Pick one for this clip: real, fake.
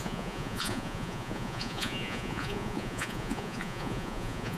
fake